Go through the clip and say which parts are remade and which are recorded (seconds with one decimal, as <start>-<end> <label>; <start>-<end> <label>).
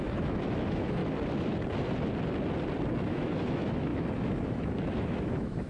0.0-1.0 remade; 1.0-3.0 recorded; 3.0-5.7 remade